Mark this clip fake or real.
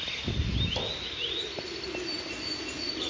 real